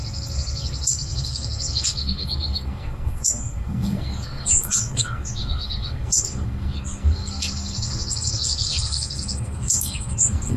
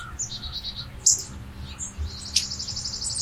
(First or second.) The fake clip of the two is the first